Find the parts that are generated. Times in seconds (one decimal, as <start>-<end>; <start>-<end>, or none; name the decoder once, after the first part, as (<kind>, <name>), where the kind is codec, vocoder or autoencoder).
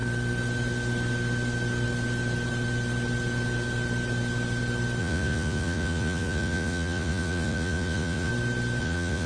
5.0-8.3 (vocoder, Vocos); 8.8-9.3